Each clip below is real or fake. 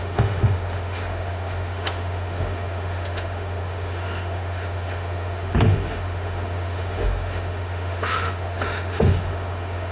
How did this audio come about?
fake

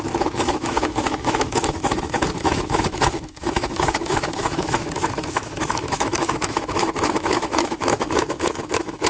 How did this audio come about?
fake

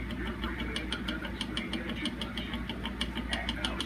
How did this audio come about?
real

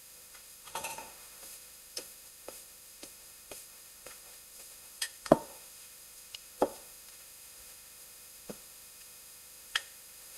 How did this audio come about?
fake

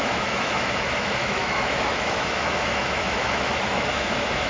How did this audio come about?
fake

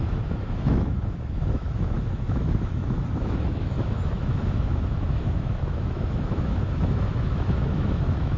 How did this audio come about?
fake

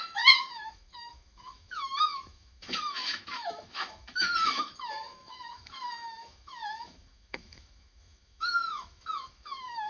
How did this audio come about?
fake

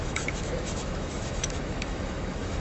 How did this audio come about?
fake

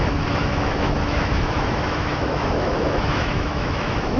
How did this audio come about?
fake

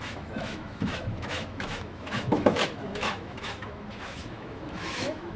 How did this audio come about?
fake